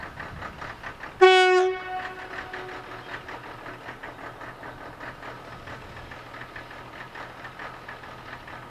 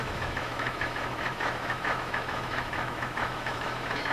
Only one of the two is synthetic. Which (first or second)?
second